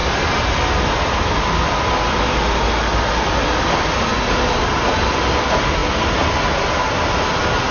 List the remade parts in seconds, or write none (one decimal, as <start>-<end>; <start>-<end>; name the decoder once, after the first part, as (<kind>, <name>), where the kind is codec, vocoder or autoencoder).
none